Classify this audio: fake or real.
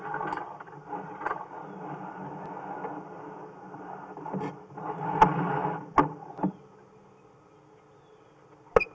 real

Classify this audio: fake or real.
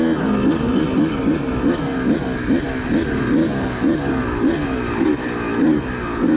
real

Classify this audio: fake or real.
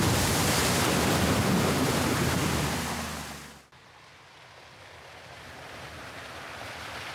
real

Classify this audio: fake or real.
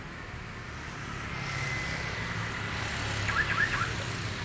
real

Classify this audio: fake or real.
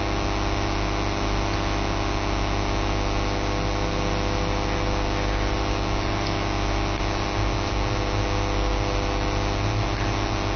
real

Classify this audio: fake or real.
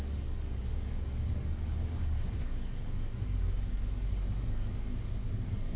fake